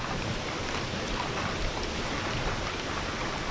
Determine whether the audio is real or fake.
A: real